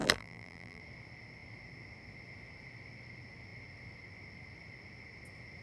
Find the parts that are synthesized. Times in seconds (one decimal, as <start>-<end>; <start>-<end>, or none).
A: 0.0-0.8